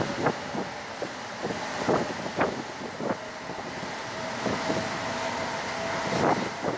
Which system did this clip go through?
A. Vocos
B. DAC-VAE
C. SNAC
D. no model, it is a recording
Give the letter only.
D